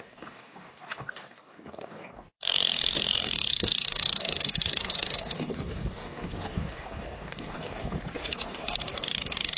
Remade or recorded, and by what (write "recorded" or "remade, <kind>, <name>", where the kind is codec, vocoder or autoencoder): remade, codec, DAC